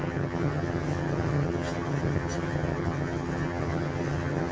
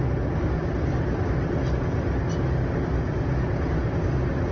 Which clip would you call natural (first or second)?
second